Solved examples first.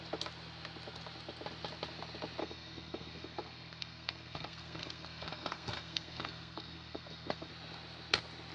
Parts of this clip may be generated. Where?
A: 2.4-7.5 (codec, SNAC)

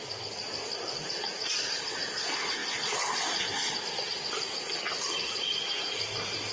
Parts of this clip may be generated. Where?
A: none

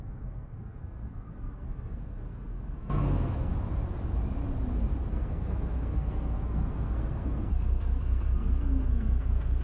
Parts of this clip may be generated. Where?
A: 0.0-3.5 (codec, SNAC); 5.1-9.6

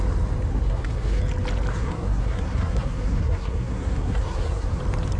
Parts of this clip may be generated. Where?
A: 0.5-1.2 (codec, SNAC); 1.7-4.8

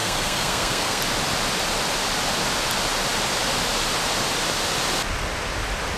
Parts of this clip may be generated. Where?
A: 0.0-1.0 (codec, SNAC)